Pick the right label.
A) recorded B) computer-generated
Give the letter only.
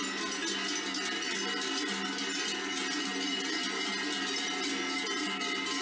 A